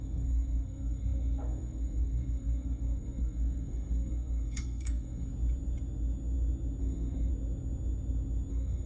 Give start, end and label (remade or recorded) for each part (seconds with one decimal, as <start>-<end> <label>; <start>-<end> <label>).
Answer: 0.0-5.3 remade; 5.3-6.8 recorded; 6.8-7.3 remade; 7.3-8.5 recorded; 8.5-8.9 remade